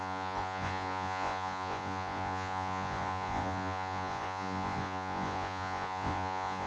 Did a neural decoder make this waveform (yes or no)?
yes